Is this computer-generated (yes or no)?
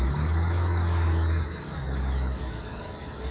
yes